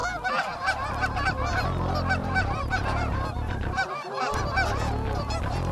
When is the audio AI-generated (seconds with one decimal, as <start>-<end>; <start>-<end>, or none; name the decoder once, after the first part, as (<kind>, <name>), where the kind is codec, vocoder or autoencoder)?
2.2-4.4 (vocoder, BigVGAN v2)